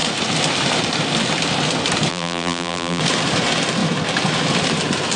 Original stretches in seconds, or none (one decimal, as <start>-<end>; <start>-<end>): 0.0-2.1; 3.0-5.2